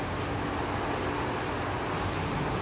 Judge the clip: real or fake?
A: real